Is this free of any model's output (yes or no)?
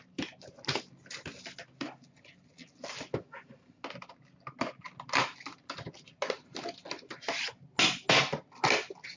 yes